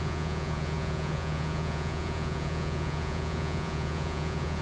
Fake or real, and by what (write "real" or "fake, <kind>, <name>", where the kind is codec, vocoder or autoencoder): fake, vocoder, Vocos